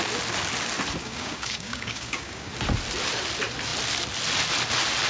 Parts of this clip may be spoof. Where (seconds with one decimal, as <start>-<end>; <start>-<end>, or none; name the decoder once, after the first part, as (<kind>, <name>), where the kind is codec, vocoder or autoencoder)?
1.0-2.5 (codec, DAC)